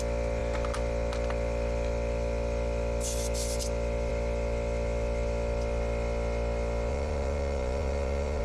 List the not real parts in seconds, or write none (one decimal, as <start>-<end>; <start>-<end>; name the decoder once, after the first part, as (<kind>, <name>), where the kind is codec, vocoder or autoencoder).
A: 6.9-8.4 (vocoder, Vocos)